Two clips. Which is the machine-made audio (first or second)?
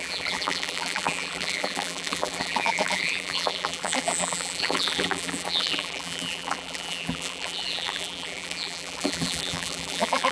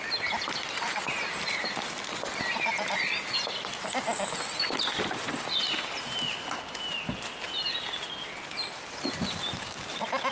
first